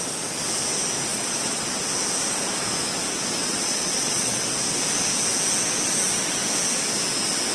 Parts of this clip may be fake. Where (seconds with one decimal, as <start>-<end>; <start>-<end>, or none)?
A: 1.1-1.6; 3.4-4.4

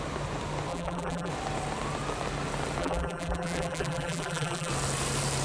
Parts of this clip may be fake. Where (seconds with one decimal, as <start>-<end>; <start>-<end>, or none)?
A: 0.7-1.3; 2.8-4.7

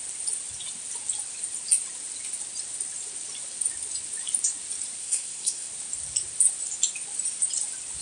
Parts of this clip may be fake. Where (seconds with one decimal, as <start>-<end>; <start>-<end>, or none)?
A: 5.0-5.7

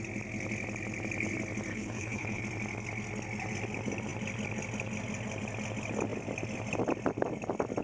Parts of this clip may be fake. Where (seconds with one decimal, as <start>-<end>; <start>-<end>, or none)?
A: 1.7-2.4

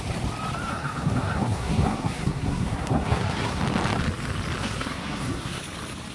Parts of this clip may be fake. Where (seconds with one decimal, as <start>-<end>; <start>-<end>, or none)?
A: 0.7-3.6; 4.6-5.6